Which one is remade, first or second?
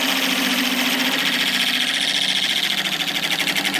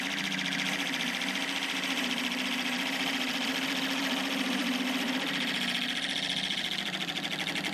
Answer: second